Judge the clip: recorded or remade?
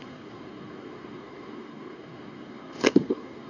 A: remade